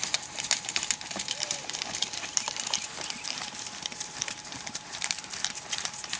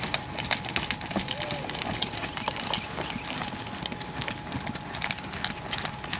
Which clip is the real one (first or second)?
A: second